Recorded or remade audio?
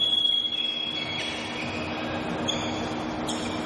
recorded